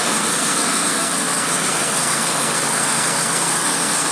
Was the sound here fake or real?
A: fake